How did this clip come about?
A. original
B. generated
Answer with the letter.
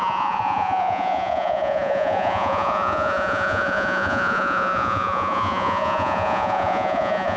B